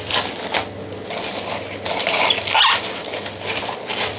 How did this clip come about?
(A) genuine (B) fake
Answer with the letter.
A